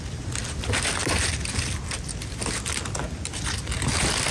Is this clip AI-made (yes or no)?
no